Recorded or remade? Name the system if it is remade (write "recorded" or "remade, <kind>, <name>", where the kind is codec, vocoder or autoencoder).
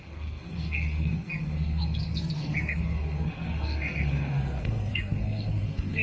remade, codec, SNAC